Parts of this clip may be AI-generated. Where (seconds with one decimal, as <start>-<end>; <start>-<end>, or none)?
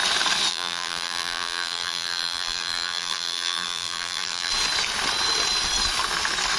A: 0.5-4.5